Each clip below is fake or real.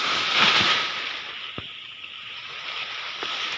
real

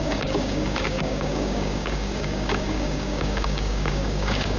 fake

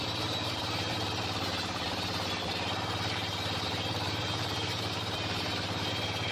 fake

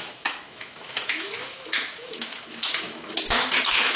fake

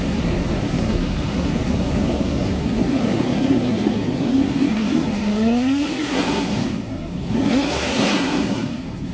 fake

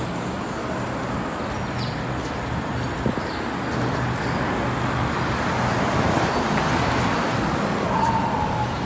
real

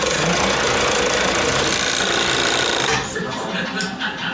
real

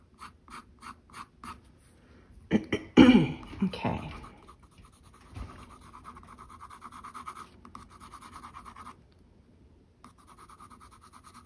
real